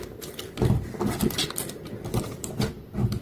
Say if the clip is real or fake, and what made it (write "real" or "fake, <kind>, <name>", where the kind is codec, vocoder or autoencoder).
real